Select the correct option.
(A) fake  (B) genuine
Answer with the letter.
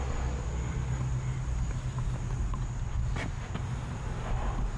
B